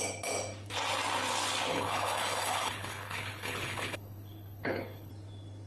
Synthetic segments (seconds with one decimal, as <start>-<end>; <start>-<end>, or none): 1.7-5.1

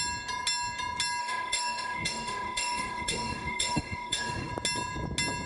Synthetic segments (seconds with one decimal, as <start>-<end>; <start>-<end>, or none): 1.2-4.5

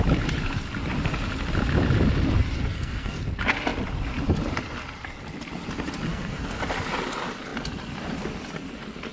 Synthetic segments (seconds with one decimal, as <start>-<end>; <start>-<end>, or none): 2.7-3.2; 6.1-6.6

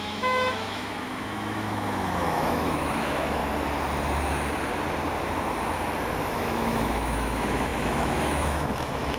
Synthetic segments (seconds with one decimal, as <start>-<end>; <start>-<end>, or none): 0.0-3.4; 6.2-9.2

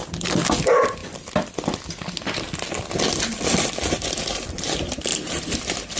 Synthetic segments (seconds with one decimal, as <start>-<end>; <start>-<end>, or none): 0.6-1.0; 4.2-5.1